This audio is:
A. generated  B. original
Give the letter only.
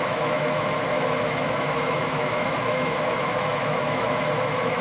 A